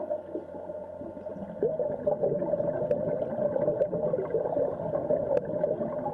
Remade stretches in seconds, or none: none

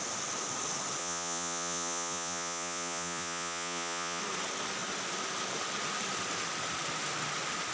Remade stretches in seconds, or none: 1.0-4.2 (vocoder, Vocos)